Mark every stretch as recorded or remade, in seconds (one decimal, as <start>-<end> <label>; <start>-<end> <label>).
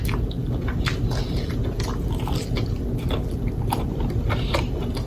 0.0-5.1 recorded